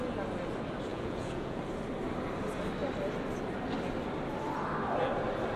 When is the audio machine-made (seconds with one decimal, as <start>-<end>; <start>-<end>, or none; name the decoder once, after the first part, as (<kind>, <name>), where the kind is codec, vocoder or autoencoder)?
0.9-1.6 (vocoder, Vocos)